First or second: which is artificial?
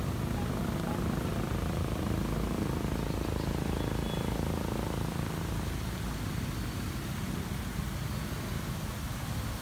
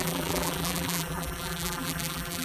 second